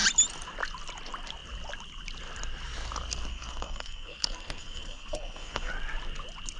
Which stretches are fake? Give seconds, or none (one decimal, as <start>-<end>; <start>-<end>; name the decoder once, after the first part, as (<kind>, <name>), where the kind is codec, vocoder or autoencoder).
3.3-5.7 (codec, SNAC)